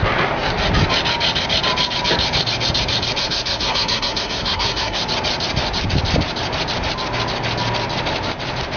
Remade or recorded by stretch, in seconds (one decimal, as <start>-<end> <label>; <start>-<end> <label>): 0.0-3.2 recorded; 3.2-5.0 remade; 5.0-8.8 recorded